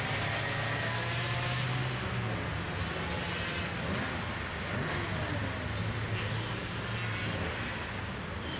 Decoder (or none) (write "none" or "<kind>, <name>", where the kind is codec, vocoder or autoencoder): none